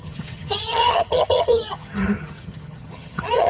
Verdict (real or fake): fake